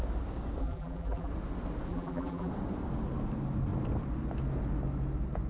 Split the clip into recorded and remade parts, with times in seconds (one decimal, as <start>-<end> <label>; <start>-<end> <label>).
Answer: 0.0-0.6 recorded; 0.6-1.3 remade; 1.3-1.9 recorded; 1.9-2.5 remade; 2.5-5.5 recorded